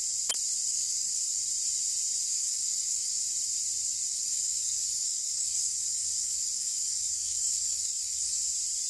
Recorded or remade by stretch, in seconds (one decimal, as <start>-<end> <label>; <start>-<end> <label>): 0.0-0.7 recorded; 0.7-1.4 remade; 1.4-2.3 recorded; 2.3-3.2 remade; 3.2-4.1 recorded; 4.1-8.4 remade; 8.4-8.9 recorded